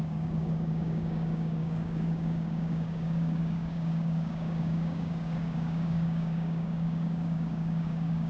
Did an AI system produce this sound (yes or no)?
yes